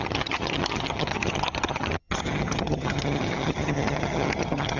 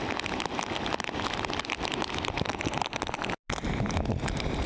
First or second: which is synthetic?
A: first